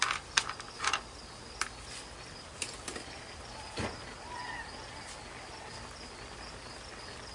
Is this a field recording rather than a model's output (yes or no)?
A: yes